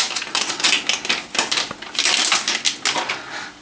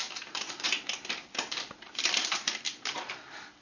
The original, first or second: first